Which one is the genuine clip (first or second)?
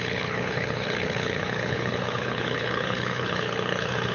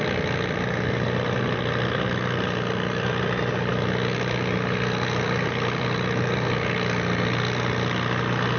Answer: second